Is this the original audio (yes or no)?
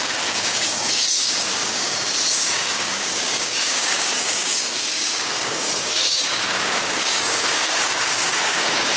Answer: no